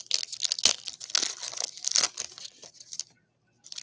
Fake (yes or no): no